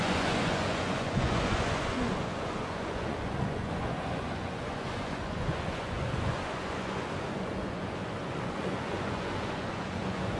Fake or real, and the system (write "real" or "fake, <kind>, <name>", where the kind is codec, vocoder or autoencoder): fake, vocoder, Vocos